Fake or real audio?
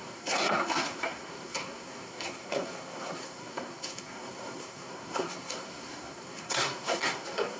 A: fake